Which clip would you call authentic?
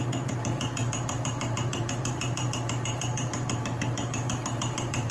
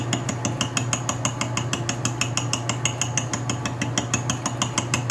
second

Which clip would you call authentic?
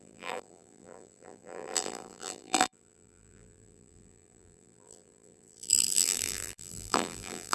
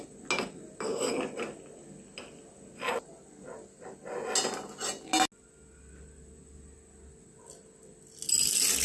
second